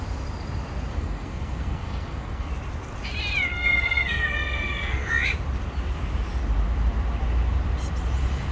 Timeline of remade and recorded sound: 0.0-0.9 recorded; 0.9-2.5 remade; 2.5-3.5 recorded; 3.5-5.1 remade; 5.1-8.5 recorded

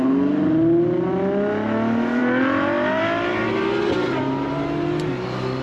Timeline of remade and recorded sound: 0.0-5.6 recorded

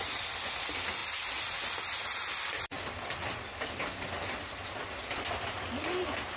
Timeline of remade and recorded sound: 0.0-6.4 recorded

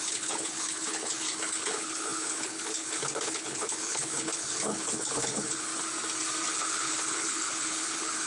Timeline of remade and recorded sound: 0.0-5.7 remade; 5.7-6.5 recorded; 6.5-8.3 remade